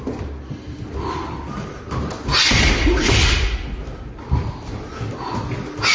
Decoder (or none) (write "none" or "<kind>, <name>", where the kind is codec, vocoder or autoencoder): none